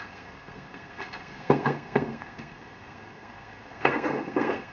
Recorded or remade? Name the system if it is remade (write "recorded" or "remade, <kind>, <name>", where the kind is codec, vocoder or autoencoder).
remade, codec, SNAC